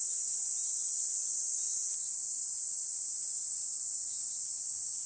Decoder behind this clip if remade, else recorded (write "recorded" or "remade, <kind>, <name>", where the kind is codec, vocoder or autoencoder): recorded